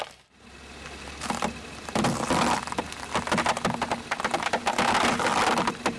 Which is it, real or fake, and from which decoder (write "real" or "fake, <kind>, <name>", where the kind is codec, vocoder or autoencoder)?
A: real